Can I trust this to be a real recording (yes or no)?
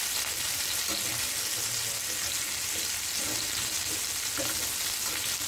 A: yes